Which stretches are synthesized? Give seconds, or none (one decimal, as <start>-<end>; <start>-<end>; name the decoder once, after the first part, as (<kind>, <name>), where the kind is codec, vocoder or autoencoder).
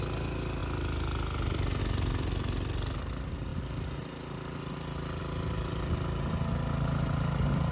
none